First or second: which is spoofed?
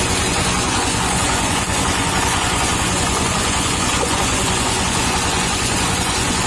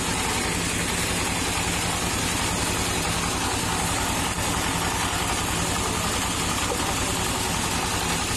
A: first